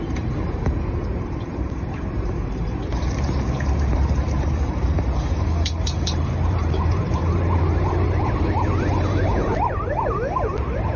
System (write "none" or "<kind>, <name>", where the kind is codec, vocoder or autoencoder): vocoder, BigVGAN v2